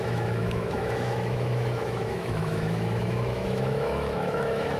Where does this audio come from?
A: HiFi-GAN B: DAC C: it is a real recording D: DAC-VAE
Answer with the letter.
D